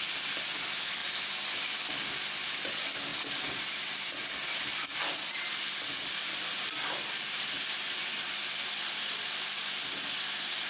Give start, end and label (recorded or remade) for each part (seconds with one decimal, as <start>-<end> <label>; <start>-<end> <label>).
0.0-10.7 recorded